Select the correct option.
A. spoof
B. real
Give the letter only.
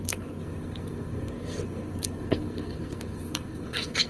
A